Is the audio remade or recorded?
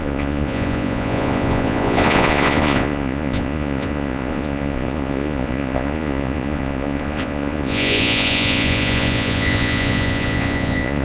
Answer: remade